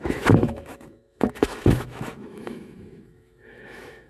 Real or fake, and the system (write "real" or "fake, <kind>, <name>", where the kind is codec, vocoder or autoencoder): fake, autoencoder, DAC-VAE